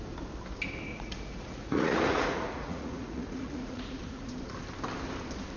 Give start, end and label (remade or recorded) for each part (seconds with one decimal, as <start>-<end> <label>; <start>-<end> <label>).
0.0-0.9 recorded; 0.9-4.3 remade; 4.3-5.6 recorded